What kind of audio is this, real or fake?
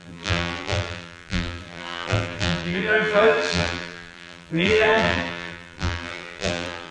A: fake